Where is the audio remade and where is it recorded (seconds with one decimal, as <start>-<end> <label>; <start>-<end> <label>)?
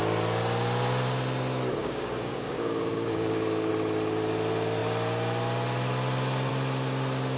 0.0-1.8 recorded; 1.8-3.7 remade; 3.7-7.4 recorded